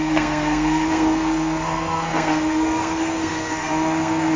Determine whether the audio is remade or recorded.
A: remade